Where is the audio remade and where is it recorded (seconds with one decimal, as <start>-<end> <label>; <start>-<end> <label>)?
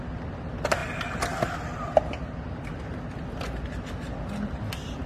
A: 0.0-5.1 recorded